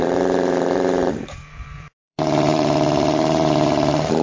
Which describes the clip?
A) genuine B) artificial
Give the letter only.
B